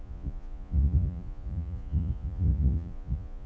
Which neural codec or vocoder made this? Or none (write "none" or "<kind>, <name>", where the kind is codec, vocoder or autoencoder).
vocoder, Vocos